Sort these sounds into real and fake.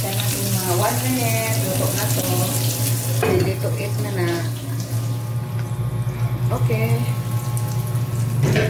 real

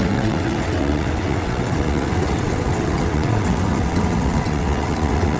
fake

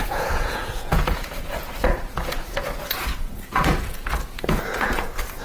fake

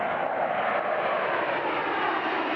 real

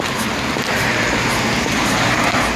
real